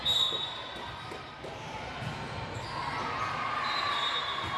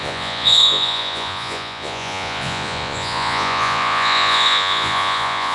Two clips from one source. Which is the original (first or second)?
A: first